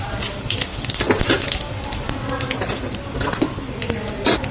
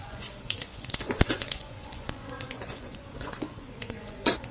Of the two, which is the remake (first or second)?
second